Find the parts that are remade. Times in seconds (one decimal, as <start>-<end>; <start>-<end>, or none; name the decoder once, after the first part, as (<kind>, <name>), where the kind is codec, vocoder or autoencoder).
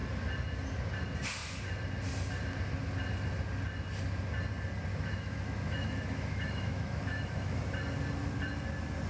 4.9-7.6 (autoencoder, DAC-VAE)